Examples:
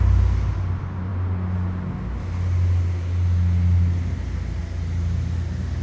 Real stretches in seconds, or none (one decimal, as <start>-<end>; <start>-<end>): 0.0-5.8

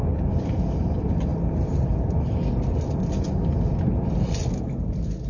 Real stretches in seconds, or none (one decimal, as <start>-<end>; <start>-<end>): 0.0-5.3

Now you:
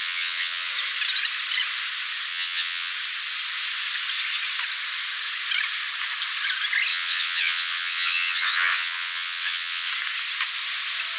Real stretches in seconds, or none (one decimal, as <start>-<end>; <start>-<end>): 0.7-2.3; 2.9-6.9; 9.9-11.2

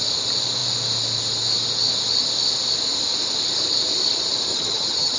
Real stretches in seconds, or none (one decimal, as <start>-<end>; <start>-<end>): 0.0-4.5

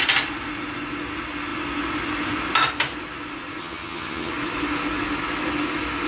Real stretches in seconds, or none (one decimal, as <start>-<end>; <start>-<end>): 0.0-3.6; 4.3-6.1